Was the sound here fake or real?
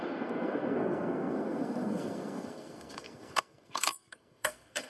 fake